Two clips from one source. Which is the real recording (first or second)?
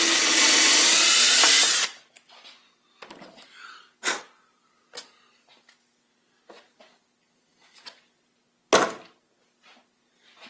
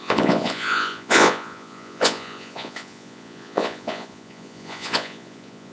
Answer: first